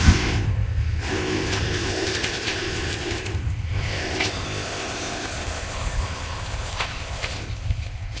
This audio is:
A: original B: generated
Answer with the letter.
B